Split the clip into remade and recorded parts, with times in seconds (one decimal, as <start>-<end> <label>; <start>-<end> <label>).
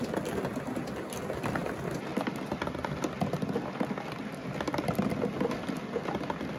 0.0-6.6 recorded